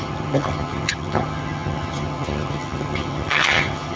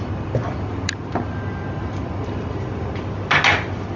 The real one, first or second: second